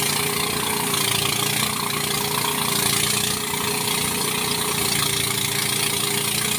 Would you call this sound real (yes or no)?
yes